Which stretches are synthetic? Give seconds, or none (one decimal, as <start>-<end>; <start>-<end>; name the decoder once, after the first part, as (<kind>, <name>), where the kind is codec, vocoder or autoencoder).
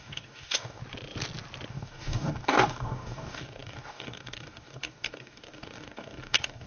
0.0-0.8 (codec, DAC); 1.7-6.7